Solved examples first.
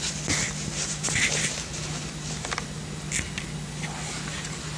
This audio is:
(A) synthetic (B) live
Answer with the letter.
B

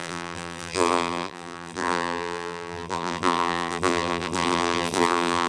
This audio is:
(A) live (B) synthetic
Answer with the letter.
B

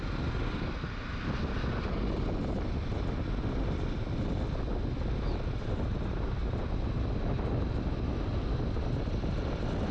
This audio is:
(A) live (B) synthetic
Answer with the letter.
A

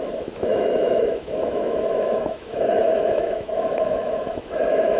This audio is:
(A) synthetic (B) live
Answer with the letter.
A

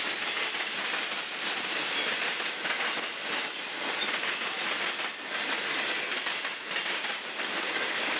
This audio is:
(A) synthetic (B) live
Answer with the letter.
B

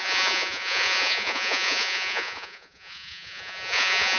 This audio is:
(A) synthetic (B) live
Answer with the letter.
A